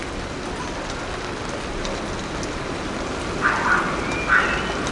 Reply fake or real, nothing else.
real